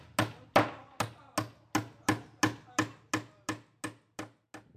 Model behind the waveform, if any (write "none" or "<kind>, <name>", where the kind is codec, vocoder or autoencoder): none